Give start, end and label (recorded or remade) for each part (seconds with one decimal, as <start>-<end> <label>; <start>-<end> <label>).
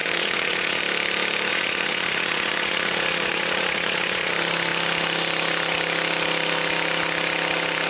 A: 0.0-0.8 remade; 0.8-1.5 recorded; 1.5-4.3 remade; 4.3-7.9 recorded